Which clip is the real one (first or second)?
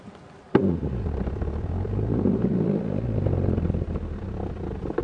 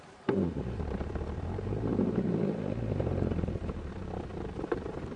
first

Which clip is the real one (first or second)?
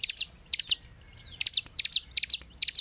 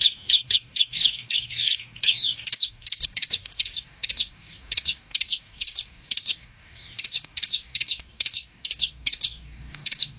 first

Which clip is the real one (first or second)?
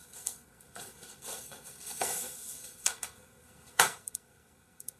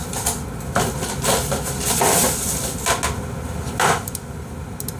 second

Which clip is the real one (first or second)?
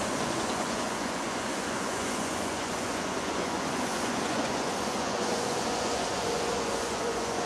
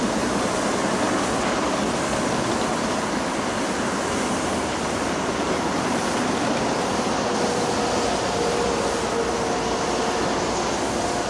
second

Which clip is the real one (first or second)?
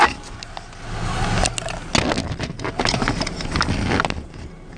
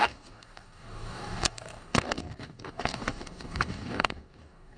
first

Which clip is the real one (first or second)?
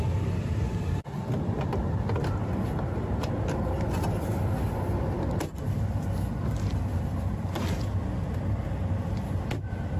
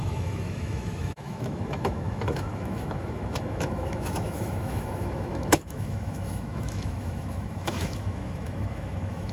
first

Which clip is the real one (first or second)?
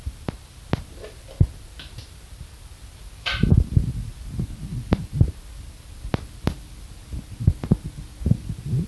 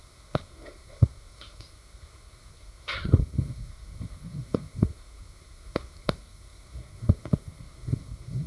first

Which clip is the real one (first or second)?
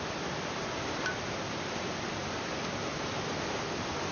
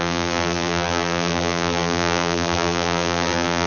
first